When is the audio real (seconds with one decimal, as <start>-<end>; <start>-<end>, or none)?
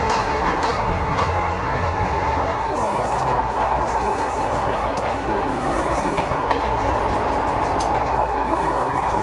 7.0-8.0